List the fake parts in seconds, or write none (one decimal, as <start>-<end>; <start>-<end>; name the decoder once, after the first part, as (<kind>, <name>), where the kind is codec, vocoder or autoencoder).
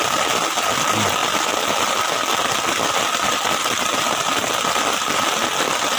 none